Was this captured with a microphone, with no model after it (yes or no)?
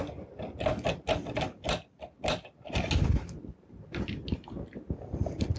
yes